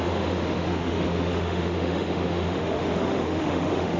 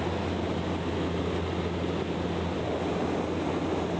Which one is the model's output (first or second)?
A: first